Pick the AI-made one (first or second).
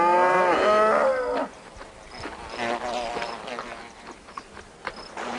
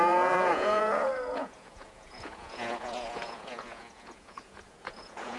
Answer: second